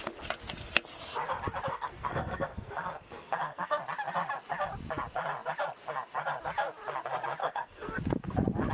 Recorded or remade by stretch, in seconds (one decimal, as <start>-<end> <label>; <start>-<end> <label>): 0.0-1.7 recorded; 1.7-3.8 remade; 3.8-7.4 recorded; 7.4-8.0 remade; 8.0-8.7 recorded